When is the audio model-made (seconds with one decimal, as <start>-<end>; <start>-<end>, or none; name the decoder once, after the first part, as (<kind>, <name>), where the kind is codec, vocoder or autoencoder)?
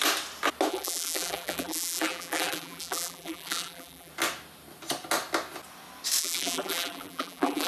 0.7-4.1 (vocoder, BigVGAN v2); 6.2-7.7